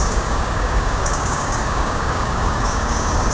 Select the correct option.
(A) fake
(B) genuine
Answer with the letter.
A